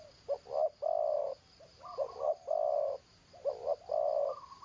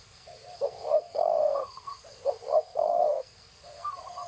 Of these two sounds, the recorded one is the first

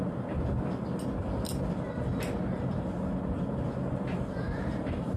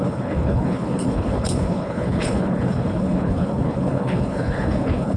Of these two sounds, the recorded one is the first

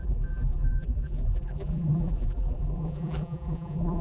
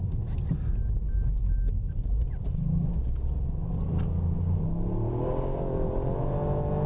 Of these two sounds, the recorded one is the second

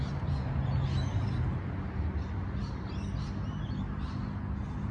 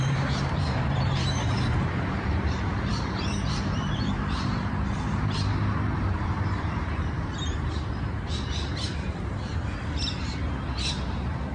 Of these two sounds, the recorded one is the first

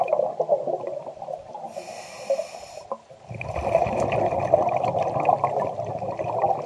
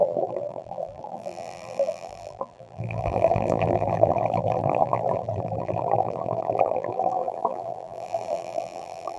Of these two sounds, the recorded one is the first